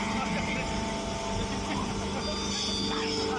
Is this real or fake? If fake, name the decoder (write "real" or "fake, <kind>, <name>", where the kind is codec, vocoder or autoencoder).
real